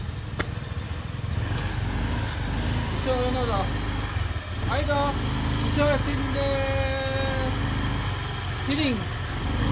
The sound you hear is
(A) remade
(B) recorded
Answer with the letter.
B